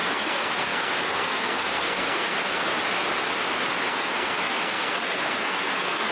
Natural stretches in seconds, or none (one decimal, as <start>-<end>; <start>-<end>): 2.7-3.9